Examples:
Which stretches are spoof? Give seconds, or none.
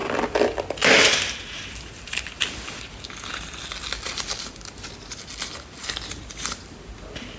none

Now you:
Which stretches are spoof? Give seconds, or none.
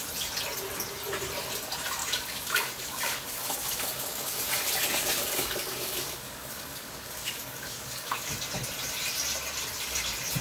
2.0-4.5 (codec, DAC); 5.0-8.3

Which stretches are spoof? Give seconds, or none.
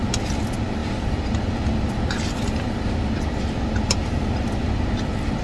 none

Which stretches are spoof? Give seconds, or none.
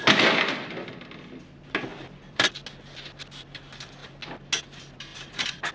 1.9-2.5 (vocoder, BigVGAN v2); 5.1-5.7